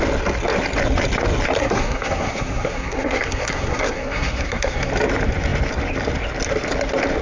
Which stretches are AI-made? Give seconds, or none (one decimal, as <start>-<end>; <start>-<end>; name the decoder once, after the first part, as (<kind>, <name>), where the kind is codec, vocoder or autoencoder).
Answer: 1.6-4.9 (codec, SNAC)